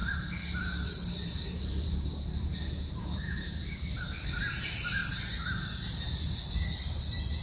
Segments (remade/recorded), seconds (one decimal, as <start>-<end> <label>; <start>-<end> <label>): 0.0-5.0 remade; 5.0-5.6 recorded; 5.6-7.4 remade

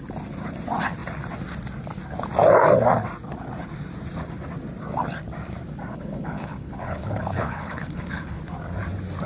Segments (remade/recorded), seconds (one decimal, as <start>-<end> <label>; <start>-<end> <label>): 0.0-5.9 recorded; 5.9-8.4 remade; 8.4-9.3 recorded

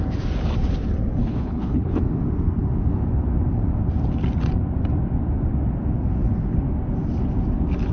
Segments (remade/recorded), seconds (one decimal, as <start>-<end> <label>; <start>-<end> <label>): 0.0-1.2 recorded; 1.2-2.0 remade; 2.0-7.9 recorded

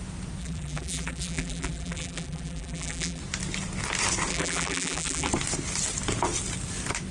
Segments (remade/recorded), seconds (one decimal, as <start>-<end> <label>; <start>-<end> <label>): 0.0-0.4 recorded; 0.4-3.2 remade; 3.2-4.3 recorded; 4.3-5.3 remade; 5.3-7.1 recorded

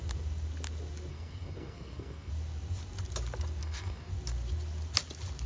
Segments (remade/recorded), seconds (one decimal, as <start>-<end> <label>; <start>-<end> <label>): 0.0-1.1 recorded; 1.1-2.3 remade; 2.3-3.6 recorded; 3.6-4.1 remade; 4.1-5.5 recorded

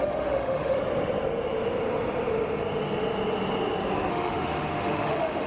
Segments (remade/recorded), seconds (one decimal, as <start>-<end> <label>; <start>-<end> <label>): 0.0-0.8 remade; 0.8-4.1 recorded; 4.1-5.5 remade